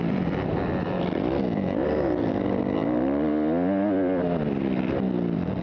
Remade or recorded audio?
recorded